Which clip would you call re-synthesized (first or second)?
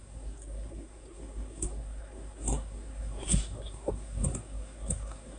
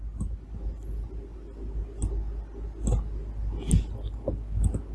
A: first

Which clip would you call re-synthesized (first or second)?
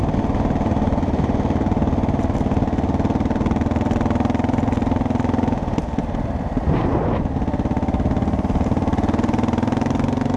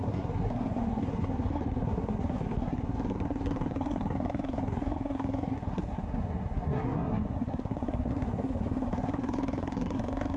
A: second